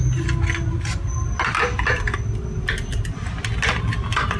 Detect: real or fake real